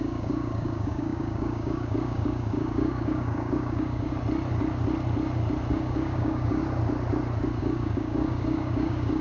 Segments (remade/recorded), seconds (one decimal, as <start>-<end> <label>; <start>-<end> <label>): 0.0-4.1 remade; 4.1-5.7 recorded; 5.7-6.6 remade; 6.6-7.6 recorded; 7.6-9.2 remade